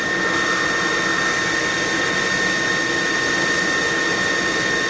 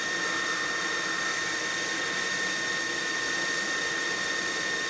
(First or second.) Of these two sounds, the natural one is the first